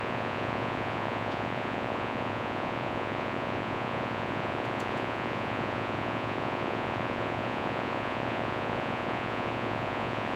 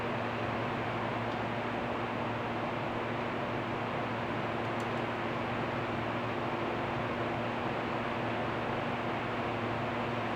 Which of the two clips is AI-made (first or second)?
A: first